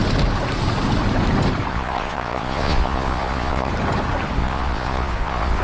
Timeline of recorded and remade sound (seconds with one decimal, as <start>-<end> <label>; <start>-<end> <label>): 0.0-1.7 recorded; 1.7-3.7 remade; 3.7-4.4 recorded; 4.4-5.6 remade